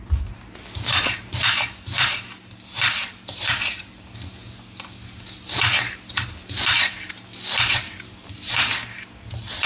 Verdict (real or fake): fake